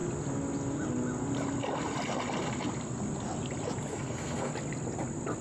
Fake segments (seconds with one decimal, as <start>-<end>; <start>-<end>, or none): 3.9-4.5